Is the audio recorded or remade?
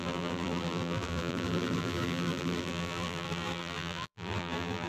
remade